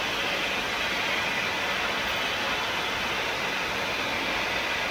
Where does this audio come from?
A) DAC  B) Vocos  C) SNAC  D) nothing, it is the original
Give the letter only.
D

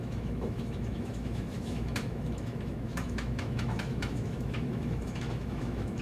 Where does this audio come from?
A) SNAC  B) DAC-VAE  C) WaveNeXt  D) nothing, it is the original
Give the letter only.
B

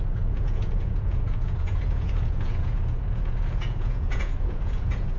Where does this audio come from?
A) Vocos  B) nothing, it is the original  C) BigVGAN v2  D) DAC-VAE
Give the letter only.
A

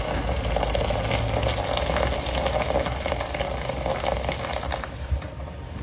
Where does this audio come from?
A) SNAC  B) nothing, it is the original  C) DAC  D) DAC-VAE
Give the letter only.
B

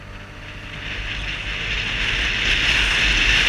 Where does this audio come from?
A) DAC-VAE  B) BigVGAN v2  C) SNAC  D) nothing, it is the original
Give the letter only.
D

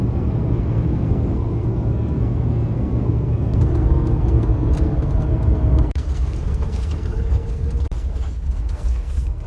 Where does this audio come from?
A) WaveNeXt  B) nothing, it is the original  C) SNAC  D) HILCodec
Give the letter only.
C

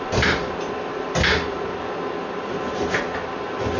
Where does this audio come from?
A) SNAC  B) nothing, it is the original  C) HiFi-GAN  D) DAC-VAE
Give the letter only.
B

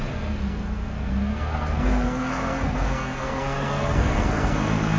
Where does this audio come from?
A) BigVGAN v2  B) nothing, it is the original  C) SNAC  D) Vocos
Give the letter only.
C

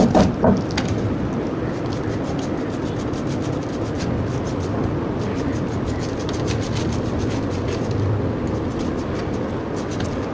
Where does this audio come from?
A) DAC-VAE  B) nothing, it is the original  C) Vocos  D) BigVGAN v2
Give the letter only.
B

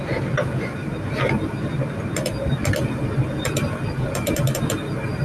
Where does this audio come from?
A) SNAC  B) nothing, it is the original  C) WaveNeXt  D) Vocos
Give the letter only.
B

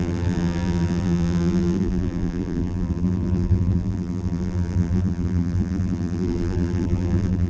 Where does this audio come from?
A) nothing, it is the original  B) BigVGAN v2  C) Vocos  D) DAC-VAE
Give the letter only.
B